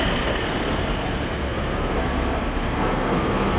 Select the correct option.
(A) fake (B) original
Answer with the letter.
A